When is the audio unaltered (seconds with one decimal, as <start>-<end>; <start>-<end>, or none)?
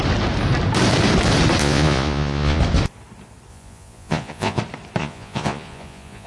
0.0-1.6; 2.6-3.5; 4.6-5.0